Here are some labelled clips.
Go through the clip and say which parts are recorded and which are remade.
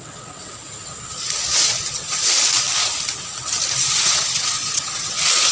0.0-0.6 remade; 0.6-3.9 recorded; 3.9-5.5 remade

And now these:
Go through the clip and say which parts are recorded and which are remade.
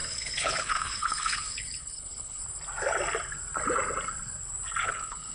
0.0-2.4 remade; 2.4-4.8 recorded; 4.8-5.3 remade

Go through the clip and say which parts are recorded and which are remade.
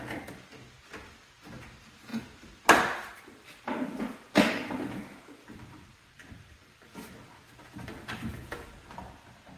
0.0-8.3 recorded; 8.3-8.9 remade; 8.9-9.6 recorded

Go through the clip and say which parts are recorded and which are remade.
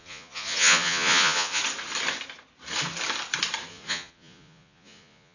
0.0-1.6 remade; 1.6-3.7 recorded; 3.7-5.3 remade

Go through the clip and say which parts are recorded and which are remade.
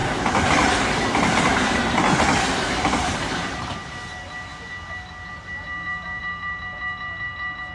0.0-2.5 recorded; 2.5-3.6 remade; 3.6-7.7 recorded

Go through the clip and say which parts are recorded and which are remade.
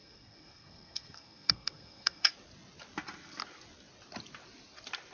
0.0-2.3 remade; 2.3-5.1 recorded